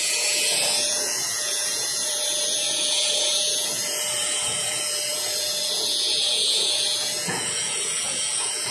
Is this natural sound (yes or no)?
no